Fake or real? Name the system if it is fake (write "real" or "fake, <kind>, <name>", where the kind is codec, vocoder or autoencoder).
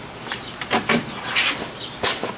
fake, vocoder, BigVGAN v2